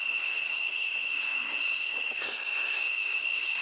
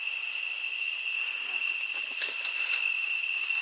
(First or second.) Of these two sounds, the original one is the second